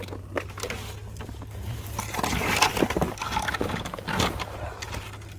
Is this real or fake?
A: real